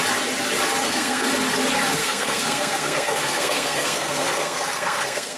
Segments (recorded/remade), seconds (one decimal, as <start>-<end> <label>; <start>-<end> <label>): 0.0-0.8 recorded; 0.8-1.3 remade; 1.3-2.0 recorded; 2.0-5.4 remade